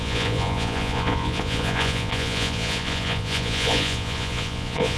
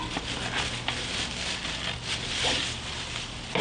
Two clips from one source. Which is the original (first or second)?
second